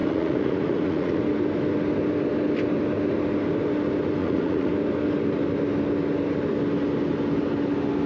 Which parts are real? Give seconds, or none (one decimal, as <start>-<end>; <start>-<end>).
1.2-4.2; 4.7-8.1